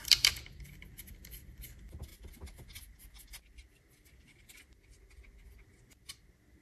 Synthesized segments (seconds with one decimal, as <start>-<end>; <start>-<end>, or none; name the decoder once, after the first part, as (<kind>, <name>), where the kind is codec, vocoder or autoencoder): 0.0-6.6 (vocoder, BigVGAN v2)